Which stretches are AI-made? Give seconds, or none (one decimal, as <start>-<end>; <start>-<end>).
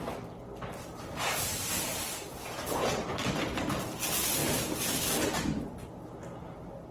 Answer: none